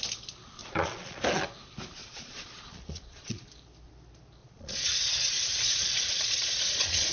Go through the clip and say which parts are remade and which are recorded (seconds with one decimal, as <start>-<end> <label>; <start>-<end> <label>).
0.0-0.6 recorded; 0.6-1.2 remade; 1.2-2.0 recorded; 2.0-3.5 remade; 3.5-4.4 recorded; 4.4-7.1 remade